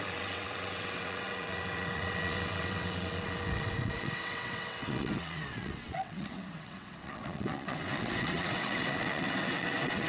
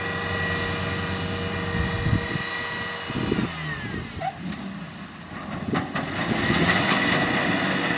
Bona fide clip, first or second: second